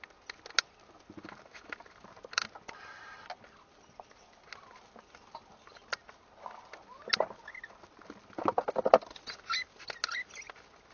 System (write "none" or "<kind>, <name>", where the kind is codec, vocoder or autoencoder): none